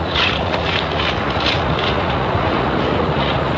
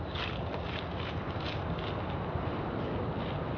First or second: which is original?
second